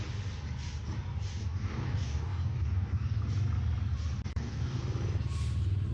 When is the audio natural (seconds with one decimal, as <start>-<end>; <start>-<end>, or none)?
0.0-1.4; 3.2-4.3; 4.8-5.9